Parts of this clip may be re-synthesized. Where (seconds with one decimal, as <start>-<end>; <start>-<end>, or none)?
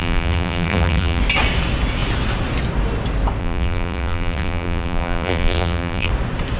0.0-1.2; 3.4-6.1